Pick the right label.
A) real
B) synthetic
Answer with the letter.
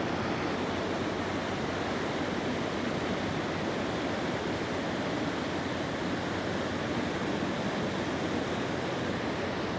A